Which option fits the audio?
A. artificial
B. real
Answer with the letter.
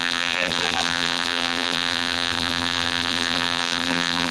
A